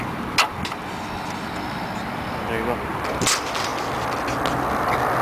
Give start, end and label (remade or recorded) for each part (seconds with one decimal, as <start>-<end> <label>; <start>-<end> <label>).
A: 0.0-5.2 recorded